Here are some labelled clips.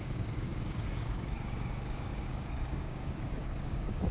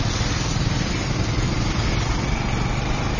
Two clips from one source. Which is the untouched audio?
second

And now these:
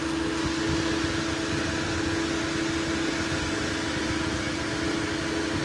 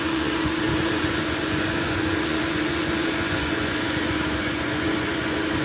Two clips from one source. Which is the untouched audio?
first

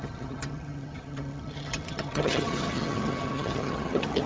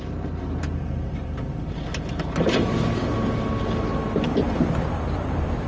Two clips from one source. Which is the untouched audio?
second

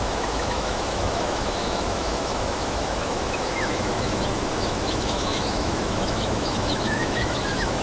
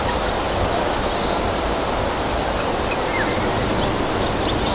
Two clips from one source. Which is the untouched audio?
second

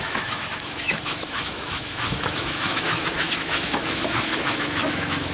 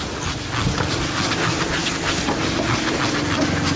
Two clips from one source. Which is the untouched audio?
second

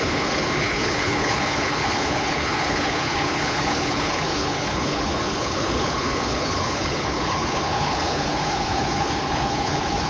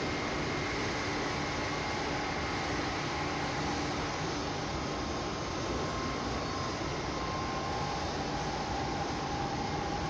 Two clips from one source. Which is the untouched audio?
second